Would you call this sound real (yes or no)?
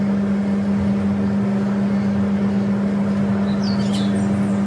yes